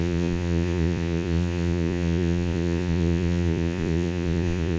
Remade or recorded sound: remade